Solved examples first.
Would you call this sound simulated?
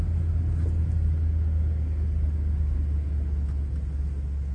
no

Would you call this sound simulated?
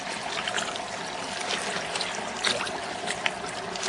no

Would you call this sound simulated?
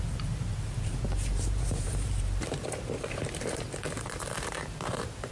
yes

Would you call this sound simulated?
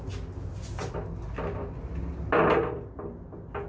no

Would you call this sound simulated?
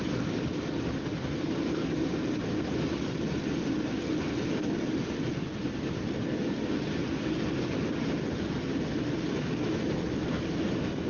no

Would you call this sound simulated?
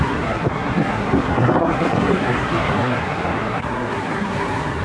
yes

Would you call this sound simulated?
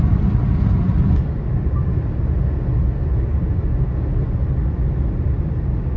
no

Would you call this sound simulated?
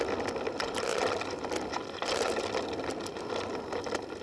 no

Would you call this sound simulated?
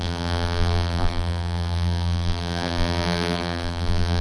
yes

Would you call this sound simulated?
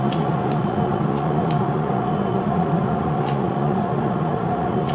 yes